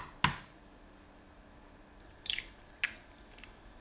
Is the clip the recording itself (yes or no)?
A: yes